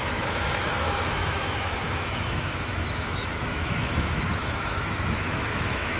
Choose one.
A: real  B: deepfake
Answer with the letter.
B